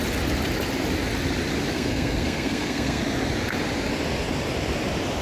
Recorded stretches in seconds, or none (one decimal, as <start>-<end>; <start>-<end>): 0.0-1.7; 3.0-5.2